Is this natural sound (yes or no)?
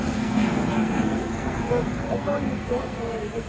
no